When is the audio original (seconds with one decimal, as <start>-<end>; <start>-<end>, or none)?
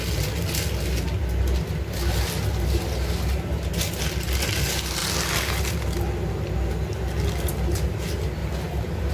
0.0-9.1